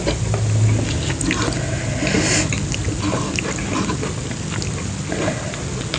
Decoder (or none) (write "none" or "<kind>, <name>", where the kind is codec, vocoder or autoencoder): none